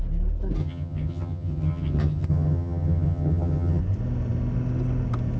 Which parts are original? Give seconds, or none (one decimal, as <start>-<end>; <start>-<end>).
0.0-0.6; 3.8-5.4

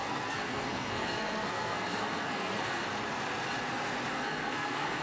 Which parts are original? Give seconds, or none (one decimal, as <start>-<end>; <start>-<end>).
2.8-4.1